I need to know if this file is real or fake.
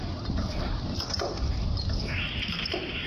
real